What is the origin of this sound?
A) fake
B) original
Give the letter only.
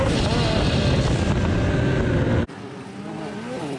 B